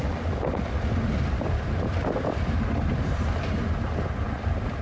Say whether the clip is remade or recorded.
recorded